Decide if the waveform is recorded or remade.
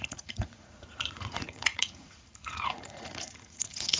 remade